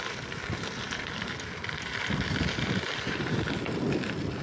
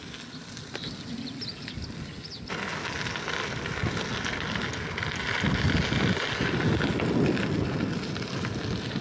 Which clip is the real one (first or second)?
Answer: second